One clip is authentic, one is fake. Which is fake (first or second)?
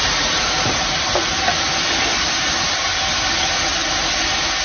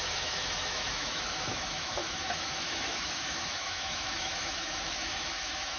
second